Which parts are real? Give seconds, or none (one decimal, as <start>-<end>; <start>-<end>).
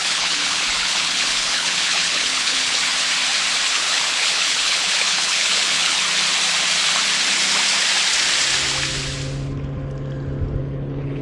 2.9-3.7; 6.0-10.6